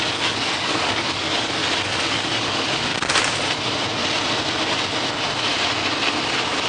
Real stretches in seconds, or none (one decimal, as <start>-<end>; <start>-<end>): 1.6-2.1; 2.9-6.7